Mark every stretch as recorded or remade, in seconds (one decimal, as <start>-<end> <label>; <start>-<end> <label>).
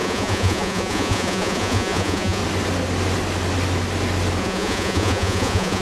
0.0-2.4 remade; 2.4-4.4 recorded; 4.4-5.8 remade